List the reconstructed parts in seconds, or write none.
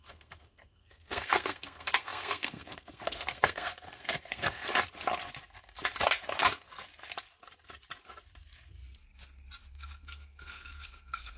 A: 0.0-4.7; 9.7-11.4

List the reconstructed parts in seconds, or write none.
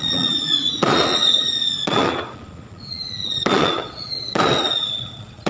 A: 0.0-5.5